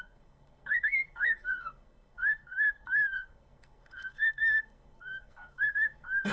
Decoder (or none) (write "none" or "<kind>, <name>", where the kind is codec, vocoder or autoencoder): codec, SNAC